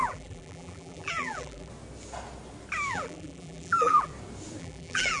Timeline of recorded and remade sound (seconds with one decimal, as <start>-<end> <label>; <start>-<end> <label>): 0.0-1.7 remade; 1.7-2.9 recorded; 2.9-4.1 remade; 4.1-4.6 recorded; 4.6-5.2 remade